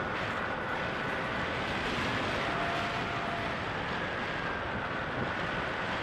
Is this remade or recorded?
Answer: recorded